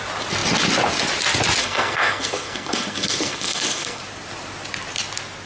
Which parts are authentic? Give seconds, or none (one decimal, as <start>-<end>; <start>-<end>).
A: 0.0-1.6; 4.0-5.5